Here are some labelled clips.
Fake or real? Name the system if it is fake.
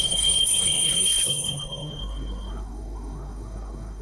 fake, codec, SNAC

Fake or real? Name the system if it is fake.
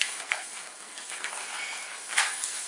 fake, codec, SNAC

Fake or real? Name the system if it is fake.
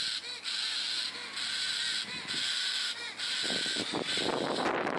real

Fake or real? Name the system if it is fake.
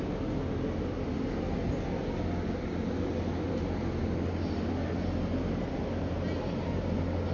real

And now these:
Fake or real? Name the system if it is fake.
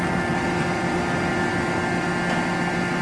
real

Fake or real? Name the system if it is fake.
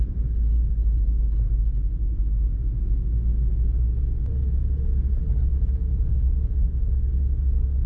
real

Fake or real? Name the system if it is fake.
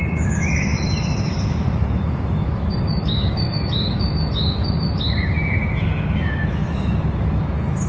fake, autoencoder, DAC-VAE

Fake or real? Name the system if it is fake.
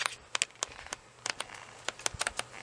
real